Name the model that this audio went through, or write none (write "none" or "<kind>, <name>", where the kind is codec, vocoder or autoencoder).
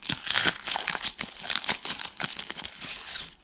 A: codec, HILCodec